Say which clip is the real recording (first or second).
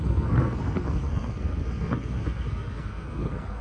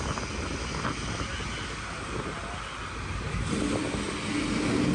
second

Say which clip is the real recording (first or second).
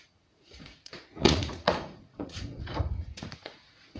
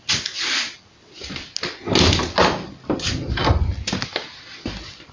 second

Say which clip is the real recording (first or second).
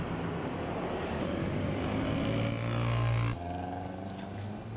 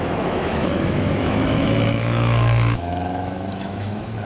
first